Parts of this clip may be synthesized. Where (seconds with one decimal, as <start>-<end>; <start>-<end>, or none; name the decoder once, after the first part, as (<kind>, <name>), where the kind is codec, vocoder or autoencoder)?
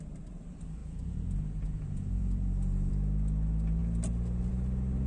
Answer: 0.8-2.9 (vocoder, Vocos)